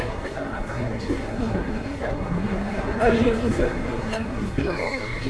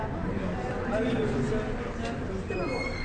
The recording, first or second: second